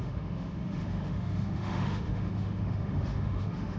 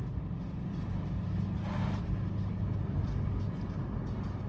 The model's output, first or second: first